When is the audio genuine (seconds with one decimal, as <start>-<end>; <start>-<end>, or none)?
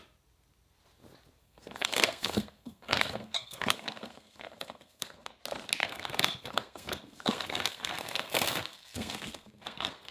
0.0-1.4; 5.3-5.8